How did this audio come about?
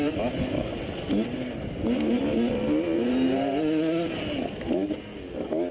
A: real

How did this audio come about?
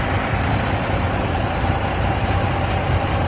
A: fake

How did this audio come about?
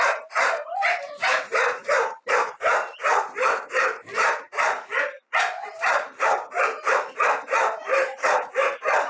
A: fake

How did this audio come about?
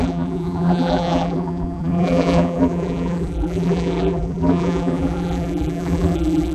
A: fake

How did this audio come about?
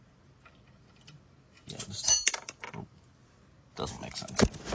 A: fake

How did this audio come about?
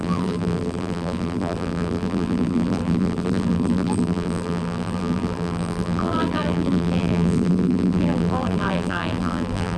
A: fake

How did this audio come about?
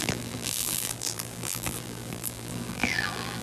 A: fake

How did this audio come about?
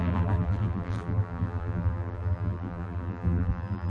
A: fake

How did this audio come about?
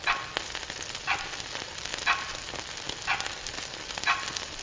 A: real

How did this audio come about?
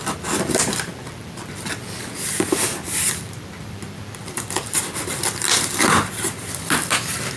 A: fake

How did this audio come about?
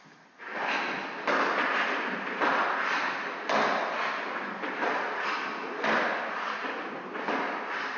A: real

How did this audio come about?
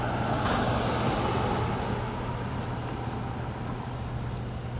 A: real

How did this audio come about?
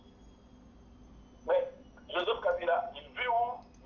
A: real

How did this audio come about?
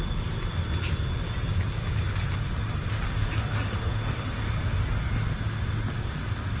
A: real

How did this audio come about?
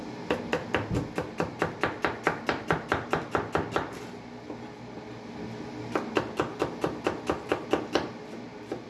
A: real